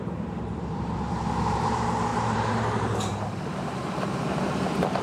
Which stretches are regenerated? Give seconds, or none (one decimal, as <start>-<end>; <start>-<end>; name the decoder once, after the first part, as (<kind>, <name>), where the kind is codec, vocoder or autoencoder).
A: 0.0-5.0 (vocoder, BigVGAN v2)